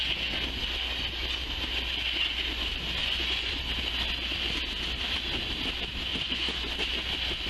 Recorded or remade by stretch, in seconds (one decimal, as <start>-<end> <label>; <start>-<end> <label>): 0.0-3.0 recorded; 3.0-3.6 remade; 3.6-6.1 recorded; 6.1-6.7 remade; 6.7-7.5 recorded